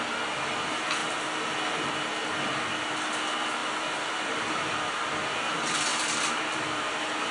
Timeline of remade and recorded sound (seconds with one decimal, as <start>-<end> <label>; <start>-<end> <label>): 0.0-3.6 recorded; 3.6-5.1 remade; 5.1-5.9 recorded; 5.9-7.3 remade